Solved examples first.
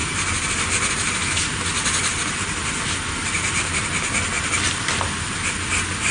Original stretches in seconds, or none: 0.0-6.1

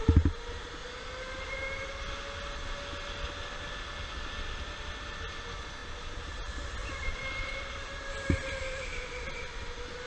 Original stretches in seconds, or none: 0.0-0.8; 1.9-5.8; 6.3-6.8; 8.6-10.1

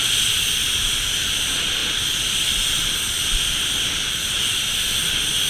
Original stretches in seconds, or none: 0.0-5.5